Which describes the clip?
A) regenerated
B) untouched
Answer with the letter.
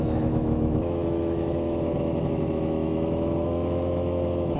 A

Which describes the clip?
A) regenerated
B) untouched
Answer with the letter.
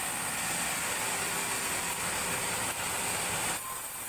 B